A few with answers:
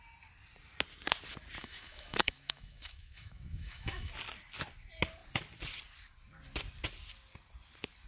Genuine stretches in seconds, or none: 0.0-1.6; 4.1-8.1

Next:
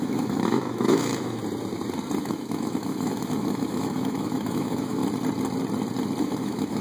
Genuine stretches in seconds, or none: 1.4-2.2; 5.0-6.2

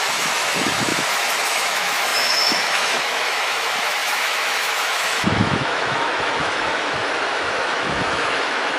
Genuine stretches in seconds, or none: none